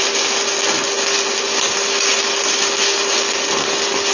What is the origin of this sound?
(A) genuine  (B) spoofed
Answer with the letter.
A